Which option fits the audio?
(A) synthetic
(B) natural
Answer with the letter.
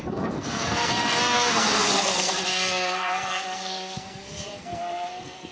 A